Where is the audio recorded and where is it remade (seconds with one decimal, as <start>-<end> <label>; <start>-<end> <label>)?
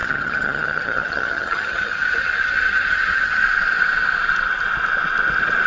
0.0-3.4 remade; 3.4-5.7 recorded